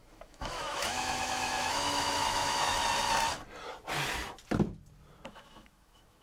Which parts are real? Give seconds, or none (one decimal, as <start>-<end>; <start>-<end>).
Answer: 2.8-5.3